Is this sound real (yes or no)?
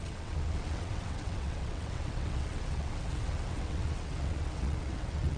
no